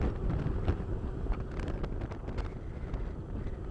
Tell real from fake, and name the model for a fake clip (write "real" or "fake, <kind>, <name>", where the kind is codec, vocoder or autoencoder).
real